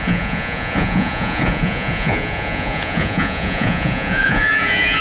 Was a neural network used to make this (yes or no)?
yes